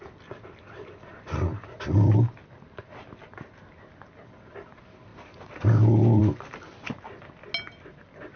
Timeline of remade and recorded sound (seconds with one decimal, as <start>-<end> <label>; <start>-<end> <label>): 0.0-1.1 recorded; 1.1-1.9 remade; 1.9-5.1 recorded; 5.1-6.2 remade; 6.2-8.4 recorded